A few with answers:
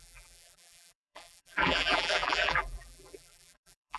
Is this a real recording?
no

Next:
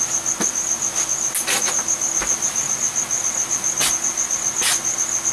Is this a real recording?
yes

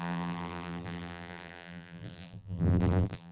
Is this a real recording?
no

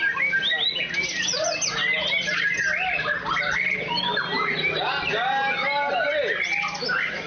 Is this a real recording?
yes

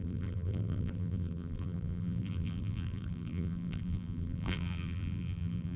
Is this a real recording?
no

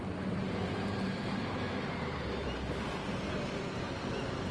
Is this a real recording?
no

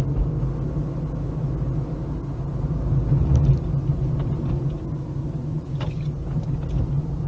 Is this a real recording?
yes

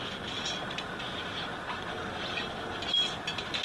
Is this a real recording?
yes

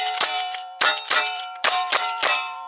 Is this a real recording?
no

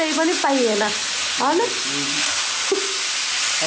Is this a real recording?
yes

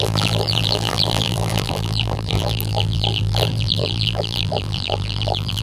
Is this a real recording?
no